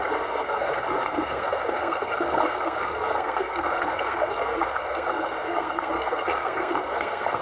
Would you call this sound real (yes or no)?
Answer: no